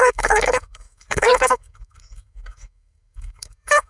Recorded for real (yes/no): no